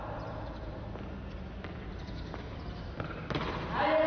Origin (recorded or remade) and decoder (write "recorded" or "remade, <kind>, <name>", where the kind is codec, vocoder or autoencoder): recorded